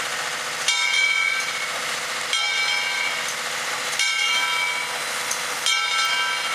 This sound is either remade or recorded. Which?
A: recorded